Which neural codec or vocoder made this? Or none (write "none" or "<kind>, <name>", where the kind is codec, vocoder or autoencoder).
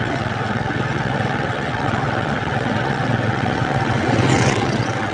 vocoder, WaveNeXt